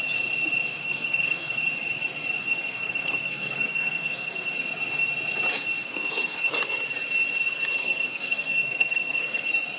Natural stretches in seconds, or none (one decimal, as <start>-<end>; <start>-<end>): 0.0-0.8; 1.6-2.4; 4.5-5.5; 6.5-7.8; 9.4-9.8

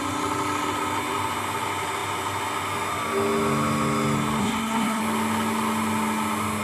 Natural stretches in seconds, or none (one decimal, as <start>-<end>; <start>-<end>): 0.0-4.4; 5.0-6.6